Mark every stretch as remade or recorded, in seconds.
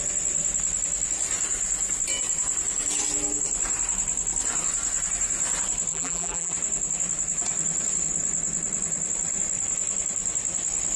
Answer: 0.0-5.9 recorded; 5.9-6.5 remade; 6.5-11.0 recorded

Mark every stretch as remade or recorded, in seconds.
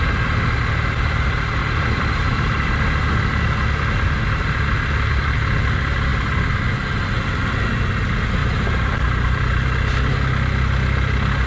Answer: 0.0-1.6 recorded; 1.6-2.7 remade; 2.7-8.4 recorded; 8.4-9.6 remade; 9.6-11.5 recorded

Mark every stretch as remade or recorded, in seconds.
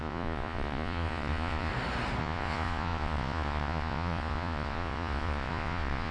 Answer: 0.0-1.7 remade; 1.7-2.2 recorded; 2.2-6.1 remade